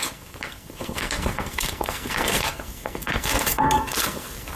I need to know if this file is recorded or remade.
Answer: remade